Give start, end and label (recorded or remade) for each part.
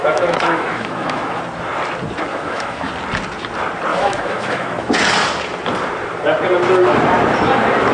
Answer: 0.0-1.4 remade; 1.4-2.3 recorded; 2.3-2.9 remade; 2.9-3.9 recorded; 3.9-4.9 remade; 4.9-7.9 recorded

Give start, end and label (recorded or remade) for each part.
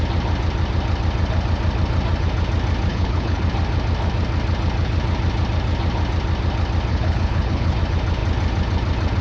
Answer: 0.0-2.9 recorded; 2.9-3.4 remade; 3.4-6.9 recorded; 6.9-7.8 remade; 7.8-9.2 recorded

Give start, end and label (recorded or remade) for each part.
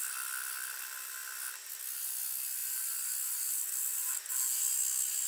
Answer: 0.0-2.6 recorded; 2.6-4.3 remade; 4.3-5.3 recorded